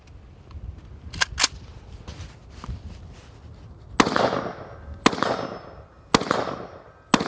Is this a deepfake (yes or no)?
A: no